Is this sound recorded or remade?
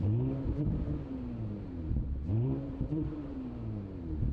remade